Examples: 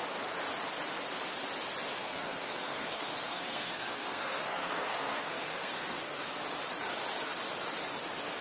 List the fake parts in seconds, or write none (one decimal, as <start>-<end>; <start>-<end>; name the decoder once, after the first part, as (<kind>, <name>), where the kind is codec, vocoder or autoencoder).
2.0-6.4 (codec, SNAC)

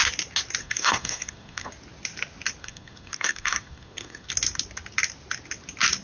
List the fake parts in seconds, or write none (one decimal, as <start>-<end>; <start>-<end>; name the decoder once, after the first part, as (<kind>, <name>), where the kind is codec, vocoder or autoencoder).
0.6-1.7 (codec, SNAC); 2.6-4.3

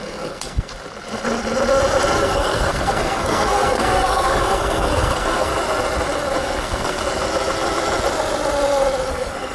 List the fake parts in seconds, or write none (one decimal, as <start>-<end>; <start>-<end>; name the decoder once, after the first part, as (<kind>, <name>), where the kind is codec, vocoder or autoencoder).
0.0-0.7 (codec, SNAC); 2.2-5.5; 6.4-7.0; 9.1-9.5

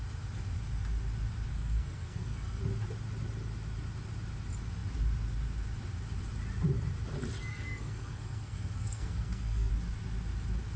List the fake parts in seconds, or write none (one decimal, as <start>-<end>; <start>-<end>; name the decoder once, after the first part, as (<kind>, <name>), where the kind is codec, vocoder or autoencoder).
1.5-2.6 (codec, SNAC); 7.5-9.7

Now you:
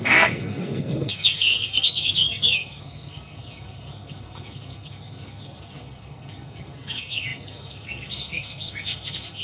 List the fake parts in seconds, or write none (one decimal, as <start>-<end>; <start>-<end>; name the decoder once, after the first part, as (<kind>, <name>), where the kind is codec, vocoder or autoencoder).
0.0-9.4 (codec, SNAC)

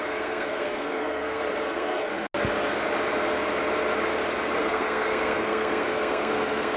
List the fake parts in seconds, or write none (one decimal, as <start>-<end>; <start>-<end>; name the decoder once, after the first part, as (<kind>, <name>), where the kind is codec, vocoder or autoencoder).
0.0-2.1 (codec, SNAC); 4.6-6.8

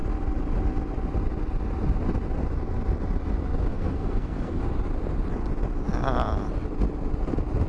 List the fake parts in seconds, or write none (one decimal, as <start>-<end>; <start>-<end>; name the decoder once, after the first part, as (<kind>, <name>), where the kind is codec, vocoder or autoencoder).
3.7-4.6 (codec, SNAC)

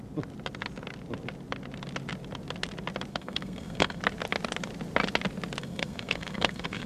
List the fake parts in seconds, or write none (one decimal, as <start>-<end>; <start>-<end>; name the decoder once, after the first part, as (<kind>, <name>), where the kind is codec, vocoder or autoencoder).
3.1-4.0 (codec, SNAC); 5.6-6.9